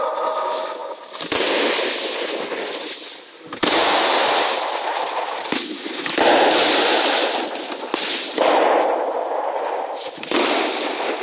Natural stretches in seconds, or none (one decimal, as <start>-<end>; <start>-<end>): 0.0-11.2